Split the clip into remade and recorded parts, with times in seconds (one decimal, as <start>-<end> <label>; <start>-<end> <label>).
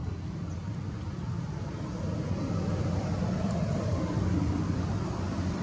0.0-3.4 recorded; 3.4-5.6 remade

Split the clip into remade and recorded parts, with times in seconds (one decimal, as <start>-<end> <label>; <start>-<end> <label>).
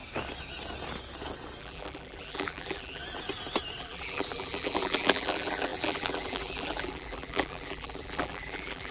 0.0-1.6 recorded; 1.6-3.0 remade; 3.0-3.8 recorded; 3.8-8.9 remade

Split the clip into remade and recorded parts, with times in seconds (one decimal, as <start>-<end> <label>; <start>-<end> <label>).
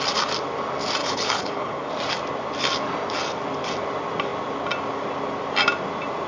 0.0-1.0 recorded; 1.0-1.9 remade; 1.9-6.3 recorded